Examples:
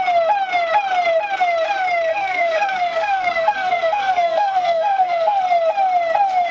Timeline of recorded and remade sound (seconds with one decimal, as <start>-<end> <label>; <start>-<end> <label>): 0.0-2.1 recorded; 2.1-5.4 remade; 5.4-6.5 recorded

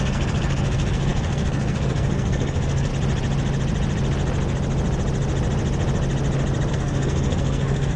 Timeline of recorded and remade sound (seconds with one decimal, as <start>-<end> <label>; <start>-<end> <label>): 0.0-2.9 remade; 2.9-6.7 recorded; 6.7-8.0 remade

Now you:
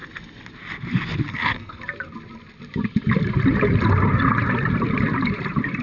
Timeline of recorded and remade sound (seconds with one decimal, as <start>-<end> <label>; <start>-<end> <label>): 0.0-1.3 recorded; 1.3-1.8 remade; 1.8-5.8 recorded